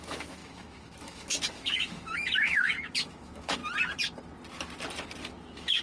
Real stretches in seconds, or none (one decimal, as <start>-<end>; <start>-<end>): 3.6-5.3

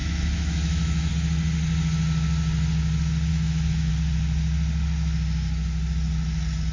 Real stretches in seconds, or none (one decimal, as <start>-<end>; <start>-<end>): 1.1-3.3; 3.9-6.7

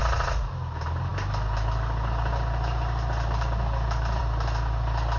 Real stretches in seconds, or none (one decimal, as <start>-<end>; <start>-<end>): 0.5-5.2

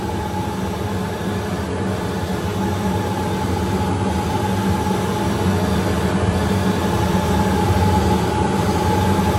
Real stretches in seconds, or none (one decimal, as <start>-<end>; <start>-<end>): 0.0-9.4

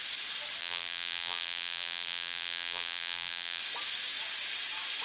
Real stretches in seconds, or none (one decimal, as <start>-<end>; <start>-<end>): 0.0-0.6; 3.6-5.0

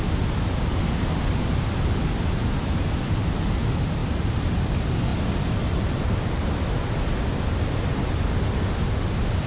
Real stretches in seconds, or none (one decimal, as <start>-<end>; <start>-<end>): 0.0-4.0; 4.5-5.1; 6.9-9.5

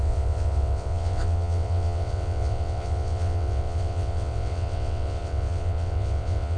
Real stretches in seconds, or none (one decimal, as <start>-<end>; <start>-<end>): none